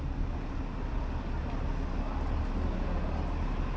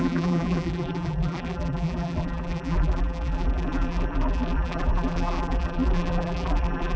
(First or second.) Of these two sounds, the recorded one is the first